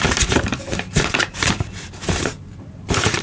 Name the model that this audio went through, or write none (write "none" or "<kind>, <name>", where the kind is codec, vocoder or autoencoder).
vocoder, BigVGAN v2